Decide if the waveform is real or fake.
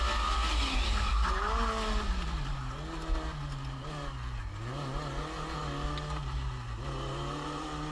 real